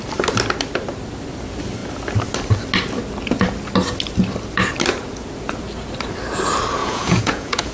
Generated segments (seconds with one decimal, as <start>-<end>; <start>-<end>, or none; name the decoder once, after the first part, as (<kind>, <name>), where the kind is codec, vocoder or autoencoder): 6.8-7.7 (vocoder, Vocos)